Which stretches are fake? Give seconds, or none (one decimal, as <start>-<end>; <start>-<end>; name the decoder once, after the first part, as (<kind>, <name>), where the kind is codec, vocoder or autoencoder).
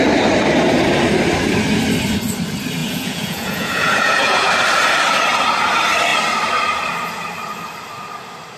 2.8-4.5 (vocoder, Vocos)